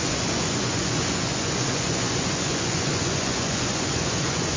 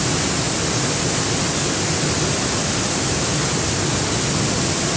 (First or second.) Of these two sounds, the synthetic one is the first